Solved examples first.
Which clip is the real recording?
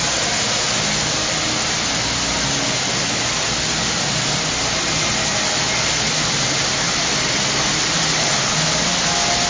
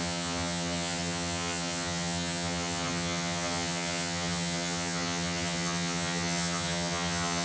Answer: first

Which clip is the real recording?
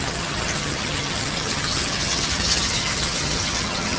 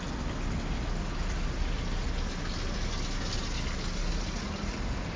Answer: second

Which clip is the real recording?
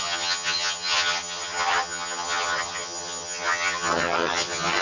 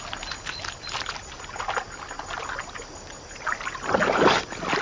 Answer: second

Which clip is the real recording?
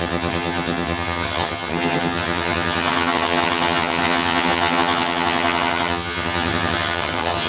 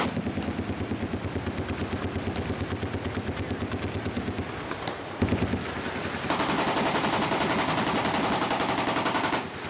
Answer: second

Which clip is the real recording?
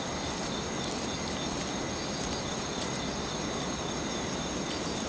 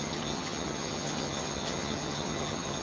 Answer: first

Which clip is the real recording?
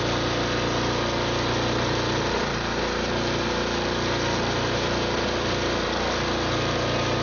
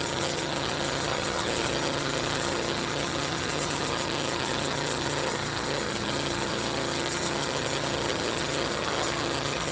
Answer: first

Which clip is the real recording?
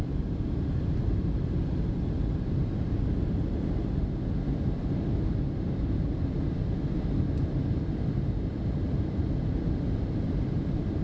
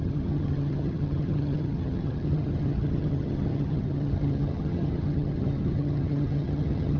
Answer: first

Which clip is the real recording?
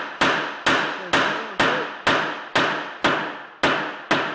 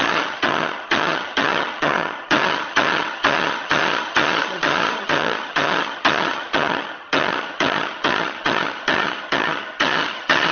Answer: first